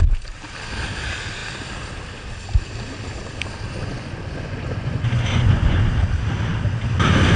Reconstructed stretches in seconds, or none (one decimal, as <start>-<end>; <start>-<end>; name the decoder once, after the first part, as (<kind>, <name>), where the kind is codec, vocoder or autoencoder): 3.8-5.9 (vocoder, Vocos)